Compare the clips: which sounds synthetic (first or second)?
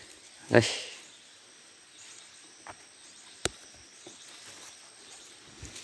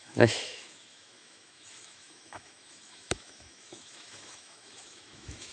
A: second